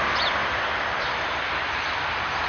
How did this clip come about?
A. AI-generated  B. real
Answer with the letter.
B